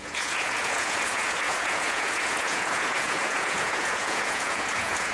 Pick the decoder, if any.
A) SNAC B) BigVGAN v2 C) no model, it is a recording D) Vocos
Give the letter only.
D